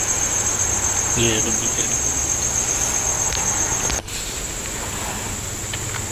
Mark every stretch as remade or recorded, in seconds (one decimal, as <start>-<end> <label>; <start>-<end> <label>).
0.0-6.1 recorded